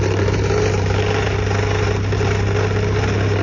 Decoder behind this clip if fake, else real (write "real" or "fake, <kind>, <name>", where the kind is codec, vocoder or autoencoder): real